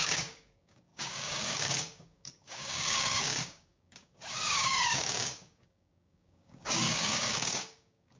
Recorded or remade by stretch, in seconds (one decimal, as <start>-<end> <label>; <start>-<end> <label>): 0.0-8.2 remade